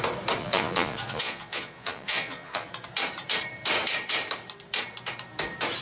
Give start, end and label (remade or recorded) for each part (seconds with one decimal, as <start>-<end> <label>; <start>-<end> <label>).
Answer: 0.0-0.4 recorded; 0.4-2.7 remade; 2.7-5.8 recorded